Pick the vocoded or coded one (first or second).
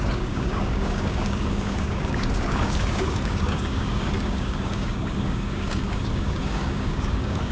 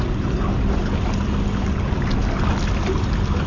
first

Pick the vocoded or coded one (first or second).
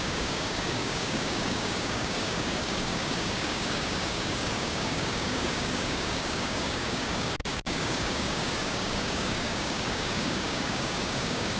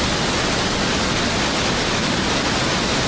first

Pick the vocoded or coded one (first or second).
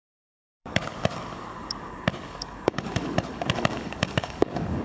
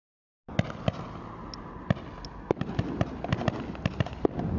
first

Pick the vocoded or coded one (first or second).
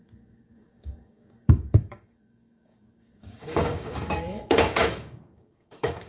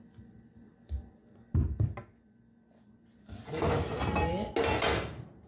first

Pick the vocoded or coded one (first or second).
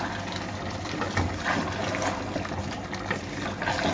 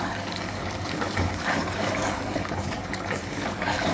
second